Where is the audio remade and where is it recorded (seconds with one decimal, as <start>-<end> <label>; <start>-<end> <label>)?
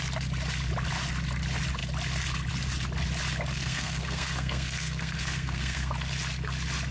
0.0-3.5 recorded; 3.5-5.9 remade; 5.9-6.9 recorded